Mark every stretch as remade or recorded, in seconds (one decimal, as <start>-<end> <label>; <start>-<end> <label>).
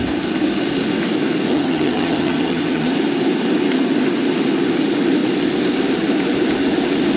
0.0-1.5 recorded; 1.5-2.9 remade; 2.9-7.2 recorded